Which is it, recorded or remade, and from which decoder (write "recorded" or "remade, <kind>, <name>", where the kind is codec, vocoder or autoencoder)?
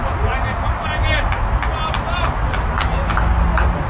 recorded